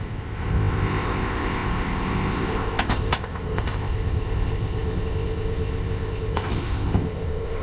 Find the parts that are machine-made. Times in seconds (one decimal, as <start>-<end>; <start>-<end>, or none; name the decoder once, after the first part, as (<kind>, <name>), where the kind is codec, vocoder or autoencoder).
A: 0.0-7.6 (codec, ZipCodec)

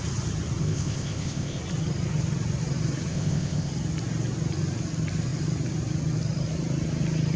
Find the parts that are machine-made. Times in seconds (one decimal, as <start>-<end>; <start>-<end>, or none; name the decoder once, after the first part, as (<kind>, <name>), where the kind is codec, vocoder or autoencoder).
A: 0.6-1.6 (codec, ZipCodec); 3.1-3.7

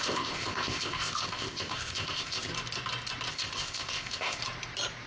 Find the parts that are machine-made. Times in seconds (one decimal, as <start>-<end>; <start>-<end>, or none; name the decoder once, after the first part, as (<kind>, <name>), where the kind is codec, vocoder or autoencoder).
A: 0.0-2.5 (codec, ZipCodec); 3.3-4.4

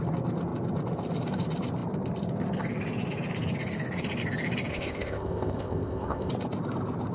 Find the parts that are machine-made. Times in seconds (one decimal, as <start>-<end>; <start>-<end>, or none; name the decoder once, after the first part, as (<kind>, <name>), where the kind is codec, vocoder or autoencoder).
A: 4.7-6.3 (codec, ZipCodec)

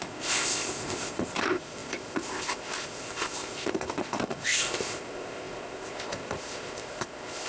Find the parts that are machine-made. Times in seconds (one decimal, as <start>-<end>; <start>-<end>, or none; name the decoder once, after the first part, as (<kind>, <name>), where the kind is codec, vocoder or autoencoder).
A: 0.0-7.5 (codec, ZipCodec)

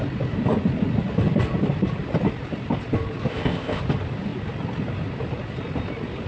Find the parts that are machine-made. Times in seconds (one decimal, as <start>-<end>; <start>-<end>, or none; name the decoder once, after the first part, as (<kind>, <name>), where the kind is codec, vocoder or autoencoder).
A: 3.3-3.8 (codec, ZipCodec)

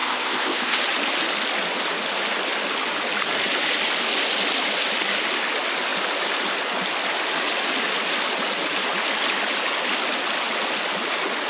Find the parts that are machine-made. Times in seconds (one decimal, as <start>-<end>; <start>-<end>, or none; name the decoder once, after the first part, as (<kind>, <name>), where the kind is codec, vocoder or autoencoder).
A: 0.0-0.8 (codec, ZipCodec)

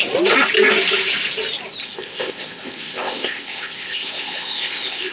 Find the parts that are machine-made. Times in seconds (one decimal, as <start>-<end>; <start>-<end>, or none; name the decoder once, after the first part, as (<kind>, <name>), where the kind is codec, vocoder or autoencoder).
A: 1.8-5.1 (codec, ZipCodec)